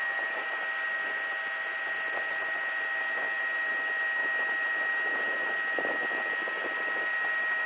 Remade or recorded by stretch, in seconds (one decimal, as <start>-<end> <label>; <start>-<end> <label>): 0.0-7.7 recorded